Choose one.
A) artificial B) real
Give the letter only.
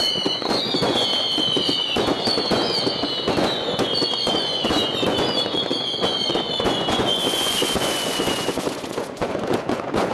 A